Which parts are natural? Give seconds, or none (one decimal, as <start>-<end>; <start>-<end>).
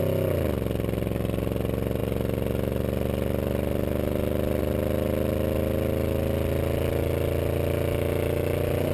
0.0-8.9